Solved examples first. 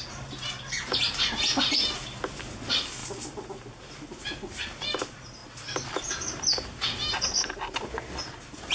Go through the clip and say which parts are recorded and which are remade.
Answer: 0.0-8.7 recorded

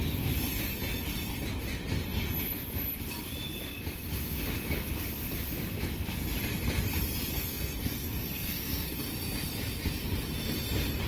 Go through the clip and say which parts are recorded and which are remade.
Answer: 0.0-7.3 recorded; 7.3-9.1 remade; 9.1-11.1 recorded

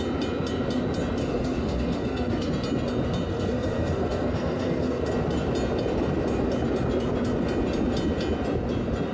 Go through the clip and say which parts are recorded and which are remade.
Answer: 0.0-1.2 recorded; 1.2-2.5 remade; 2.5-3.3 recorded; 3.3-5.0 remade; 5.0-9.1 recorded

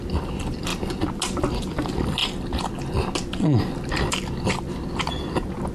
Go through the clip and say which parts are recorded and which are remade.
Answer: 0.0-5.7 recorded

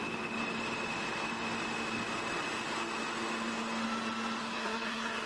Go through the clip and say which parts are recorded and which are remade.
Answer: 0.0-4.4 recorded; 4.4-5.3 remade

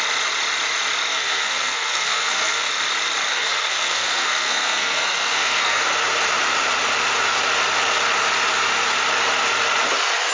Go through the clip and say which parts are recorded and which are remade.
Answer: 0.0-1.1 recorded; 1.1-2.7 remade; 2.7-3.3 recorded; 3.3-5.8 remade; 5.8-10.3 recorded